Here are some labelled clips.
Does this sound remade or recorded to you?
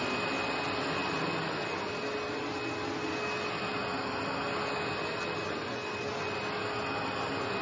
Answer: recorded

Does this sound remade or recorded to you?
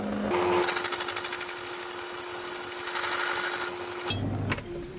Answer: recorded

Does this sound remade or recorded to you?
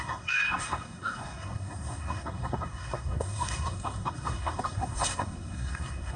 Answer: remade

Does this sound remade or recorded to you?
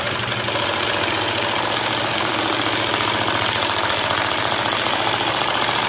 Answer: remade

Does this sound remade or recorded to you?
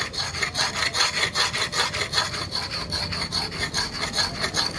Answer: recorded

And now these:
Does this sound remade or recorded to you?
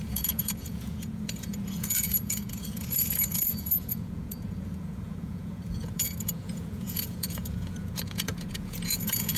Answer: remade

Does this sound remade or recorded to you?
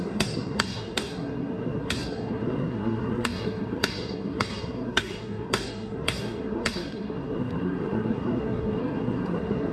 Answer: remade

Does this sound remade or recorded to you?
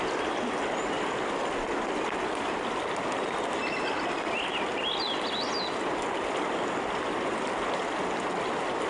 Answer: recorded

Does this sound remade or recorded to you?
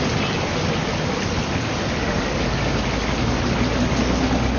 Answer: recorded